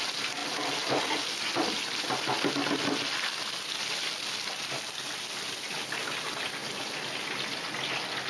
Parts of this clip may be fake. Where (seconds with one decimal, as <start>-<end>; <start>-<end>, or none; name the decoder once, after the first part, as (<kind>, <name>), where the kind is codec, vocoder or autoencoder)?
none